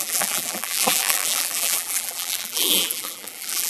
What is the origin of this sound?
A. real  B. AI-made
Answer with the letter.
B